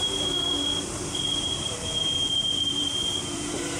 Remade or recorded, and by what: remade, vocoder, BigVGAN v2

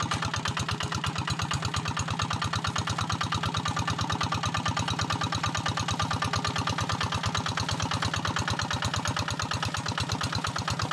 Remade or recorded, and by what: recorded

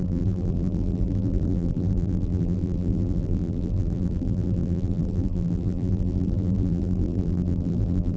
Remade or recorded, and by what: remade, vocoder, BigVGAN v2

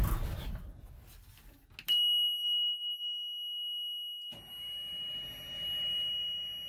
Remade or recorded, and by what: recorded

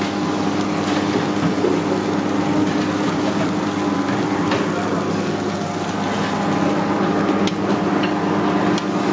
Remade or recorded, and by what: recorded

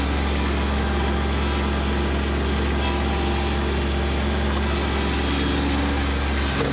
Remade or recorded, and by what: recorded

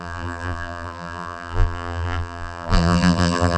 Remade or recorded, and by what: remade, vocoder, BigVGAN v2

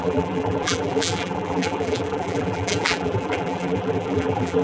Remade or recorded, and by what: remade, vocoder, BigVGAN v2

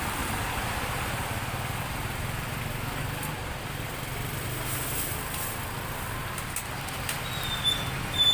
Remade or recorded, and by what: recorded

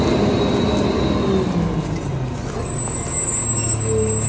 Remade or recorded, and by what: recorded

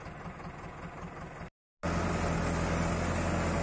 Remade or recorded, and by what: recorded